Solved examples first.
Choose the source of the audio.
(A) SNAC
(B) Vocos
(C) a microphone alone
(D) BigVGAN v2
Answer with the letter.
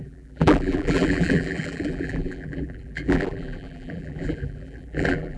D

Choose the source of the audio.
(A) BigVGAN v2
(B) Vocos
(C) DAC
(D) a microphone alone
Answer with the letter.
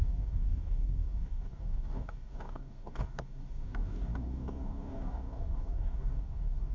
C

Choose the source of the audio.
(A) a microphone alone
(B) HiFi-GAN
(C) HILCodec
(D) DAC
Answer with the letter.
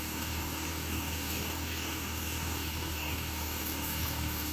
D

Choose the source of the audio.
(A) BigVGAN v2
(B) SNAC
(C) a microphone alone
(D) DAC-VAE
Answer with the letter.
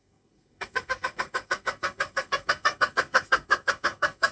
B